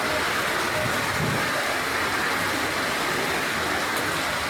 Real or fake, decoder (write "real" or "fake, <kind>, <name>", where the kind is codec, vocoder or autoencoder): real